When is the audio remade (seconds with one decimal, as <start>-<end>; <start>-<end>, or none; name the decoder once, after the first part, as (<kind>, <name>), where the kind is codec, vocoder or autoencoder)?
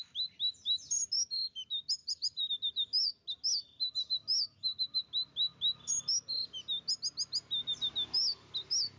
2.0-2.5 (vocoder, BigVGAN v2)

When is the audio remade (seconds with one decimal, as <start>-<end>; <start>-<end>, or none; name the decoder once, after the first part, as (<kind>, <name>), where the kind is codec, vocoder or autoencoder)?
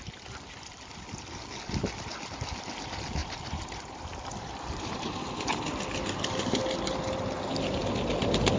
3.2-5.5 (vocoder, BigVGAN v2)